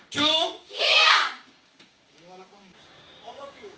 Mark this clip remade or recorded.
remade